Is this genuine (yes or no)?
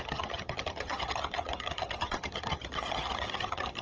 no